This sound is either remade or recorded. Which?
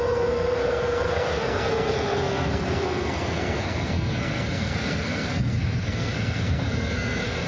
remade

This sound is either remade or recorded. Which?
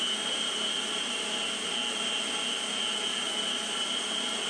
recorded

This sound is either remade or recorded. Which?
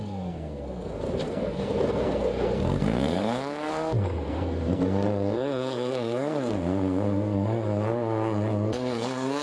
remade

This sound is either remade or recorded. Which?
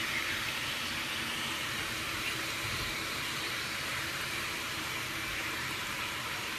remade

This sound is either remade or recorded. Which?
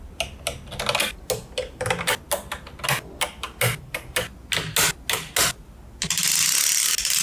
recorded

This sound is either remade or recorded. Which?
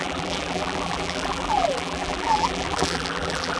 remade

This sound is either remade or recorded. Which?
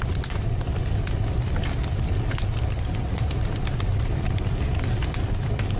recorded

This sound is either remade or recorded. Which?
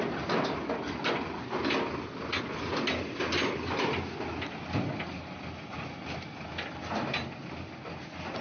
recorded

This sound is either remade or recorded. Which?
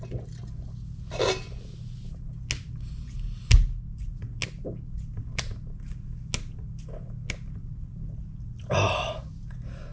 recorded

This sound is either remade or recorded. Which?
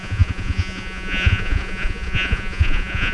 remade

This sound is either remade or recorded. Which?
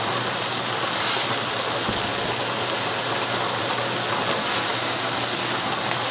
recorded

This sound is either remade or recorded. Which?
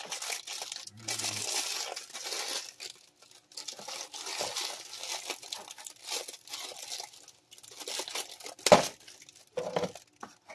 recorded